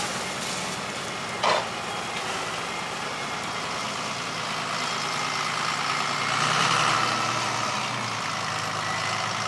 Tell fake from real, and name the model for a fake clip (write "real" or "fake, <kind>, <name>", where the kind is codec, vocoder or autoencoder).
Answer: real